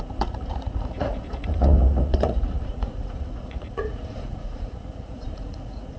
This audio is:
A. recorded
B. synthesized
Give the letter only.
B